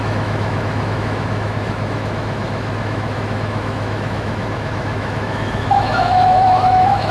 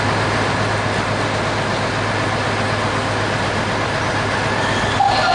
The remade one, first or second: first